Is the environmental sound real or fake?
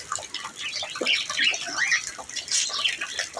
real